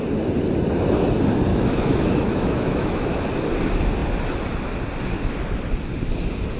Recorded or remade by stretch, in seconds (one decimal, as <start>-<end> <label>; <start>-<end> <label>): 0.0-1.5 recorded; 1.5-3.2 remade; 3.2-6.6 recorded